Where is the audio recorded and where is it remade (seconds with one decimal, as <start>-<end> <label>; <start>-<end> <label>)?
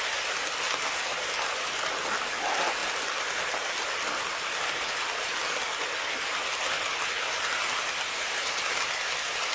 0.0-9.5 recorded